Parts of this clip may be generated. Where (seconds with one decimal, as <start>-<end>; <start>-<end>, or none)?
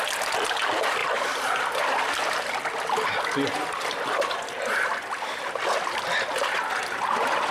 1.0-2.5